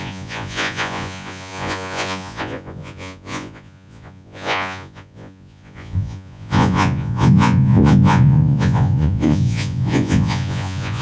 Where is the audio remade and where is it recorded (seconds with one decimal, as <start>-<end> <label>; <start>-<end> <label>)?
0.0-11.0 remade